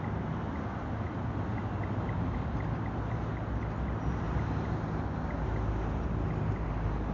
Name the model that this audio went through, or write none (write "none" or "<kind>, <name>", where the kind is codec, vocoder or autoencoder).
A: none